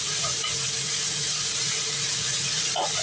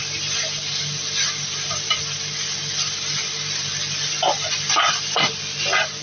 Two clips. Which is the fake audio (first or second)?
first